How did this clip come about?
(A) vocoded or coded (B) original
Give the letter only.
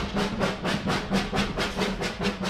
B